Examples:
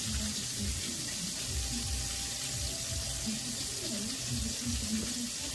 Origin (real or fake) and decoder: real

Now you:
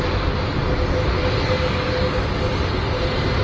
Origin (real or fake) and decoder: real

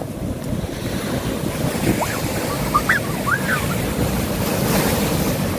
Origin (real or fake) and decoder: real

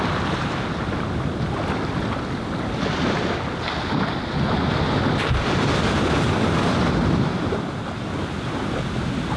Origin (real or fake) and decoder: real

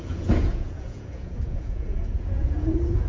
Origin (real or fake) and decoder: fake, vocoder, Vocos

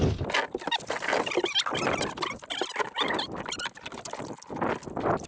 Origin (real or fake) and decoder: real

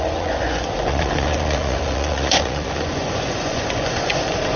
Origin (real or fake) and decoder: fake, vocoder, Vocos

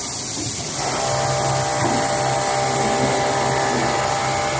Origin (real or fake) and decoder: real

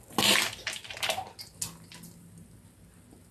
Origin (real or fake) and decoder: real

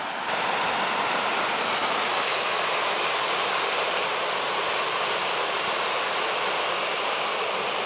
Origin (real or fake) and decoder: real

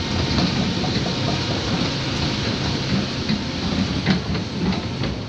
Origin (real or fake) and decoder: real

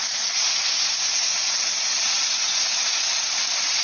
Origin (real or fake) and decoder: fake, vocoder, Vocos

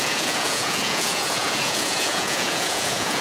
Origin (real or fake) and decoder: fake, vocoder, Vocos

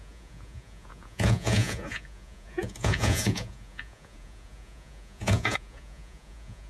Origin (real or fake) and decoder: fake, vocoder, Vocos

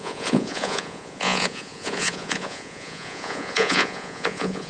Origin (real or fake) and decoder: fake, vocoder, Vocos